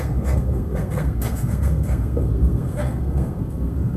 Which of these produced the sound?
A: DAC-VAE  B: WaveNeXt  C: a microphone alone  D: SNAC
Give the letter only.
D